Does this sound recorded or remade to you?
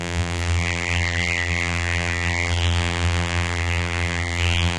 remade